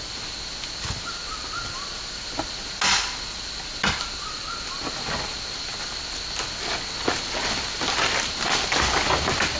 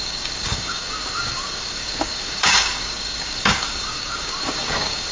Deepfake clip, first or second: second